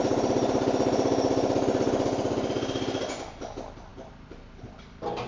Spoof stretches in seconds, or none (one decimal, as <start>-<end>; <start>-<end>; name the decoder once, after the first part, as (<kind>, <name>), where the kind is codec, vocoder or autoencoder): none

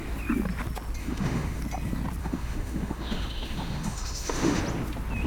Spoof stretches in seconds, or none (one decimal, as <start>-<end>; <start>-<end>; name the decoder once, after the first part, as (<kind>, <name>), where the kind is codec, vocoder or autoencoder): 1.0-1.6 (autoencoder, DAC-VAE); 2.2-4.6

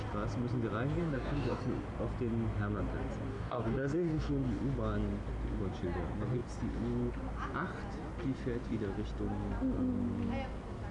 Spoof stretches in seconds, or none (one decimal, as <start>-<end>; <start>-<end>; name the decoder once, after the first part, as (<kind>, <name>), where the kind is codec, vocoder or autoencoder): 1.0-1.6 (codec, DAC); 3.3-4.3

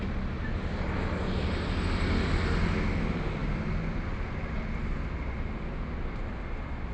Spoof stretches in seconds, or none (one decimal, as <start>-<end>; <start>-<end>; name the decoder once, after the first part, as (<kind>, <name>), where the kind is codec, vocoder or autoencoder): none